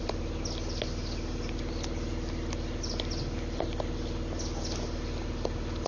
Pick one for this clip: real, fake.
real